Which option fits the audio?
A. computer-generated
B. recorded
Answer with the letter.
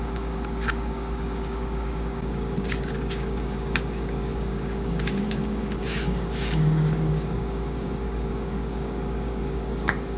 A